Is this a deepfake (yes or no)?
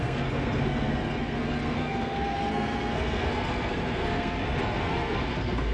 yes